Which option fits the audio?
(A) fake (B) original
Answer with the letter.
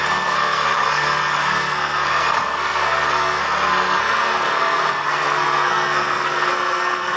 A